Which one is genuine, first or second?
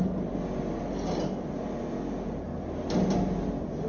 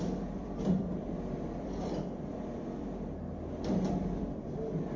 first